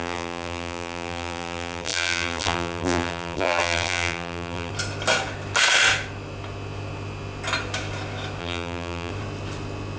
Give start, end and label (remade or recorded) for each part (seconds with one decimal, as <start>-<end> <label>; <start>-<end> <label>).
0.0-4.7 remade; 4.7-8.4 recorded; 8.4-9.1 remade; 9.1-10.0 recorded